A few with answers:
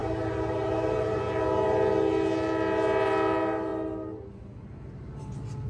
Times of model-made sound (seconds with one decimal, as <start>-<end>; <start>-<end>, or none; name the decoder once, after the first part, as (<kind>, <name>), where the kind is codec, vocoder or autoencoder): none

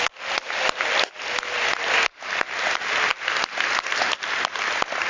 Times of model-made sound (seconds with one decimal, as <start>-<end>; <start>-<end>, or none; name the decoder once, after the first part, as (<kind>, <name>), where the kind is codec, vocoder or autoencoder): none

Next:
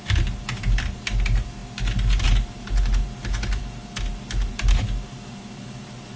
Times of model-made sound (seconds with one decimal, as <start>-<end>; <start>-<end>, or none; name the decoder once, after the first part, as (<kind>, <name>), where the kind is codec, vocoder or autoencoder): none

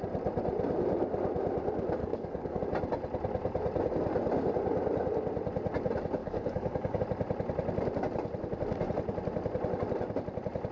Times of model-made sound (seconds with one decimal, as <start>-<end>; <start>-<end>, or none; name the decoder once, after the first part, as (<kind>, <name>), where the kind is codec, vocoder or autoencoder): 2.0-2.6 (codec, DAC); 6.2-7.0

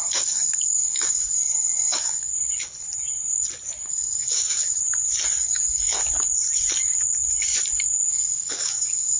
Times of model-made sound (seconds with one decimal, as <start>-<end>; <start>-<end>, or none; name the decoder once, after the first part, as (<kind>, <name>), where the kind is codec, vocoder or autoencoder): 0.0-2.3 (codec, DAC); 3.9-4.8; 5.4-6.0; 8.1-9.2

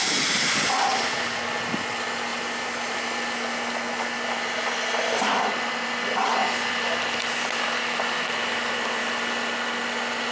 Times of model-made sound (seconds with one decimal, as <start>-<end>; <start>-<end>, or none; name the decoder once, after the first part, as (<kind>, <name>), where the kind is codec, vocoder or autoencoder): none

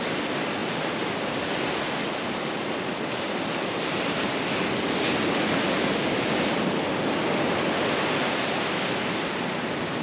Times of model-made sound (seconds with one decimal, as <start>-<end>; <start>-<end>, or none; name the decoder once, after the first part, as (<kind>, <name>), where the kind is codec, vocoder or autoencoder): none

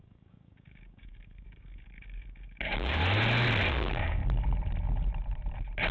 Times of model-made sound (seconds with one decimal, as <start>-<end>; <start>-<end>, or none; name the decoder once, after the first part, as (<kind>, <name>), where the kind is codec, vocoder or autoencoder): 0.0-3.0 (codec, DAC); 3.7-4.2